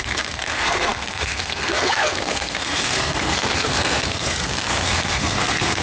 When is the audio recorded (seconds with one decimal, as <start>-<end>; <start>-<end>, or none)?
none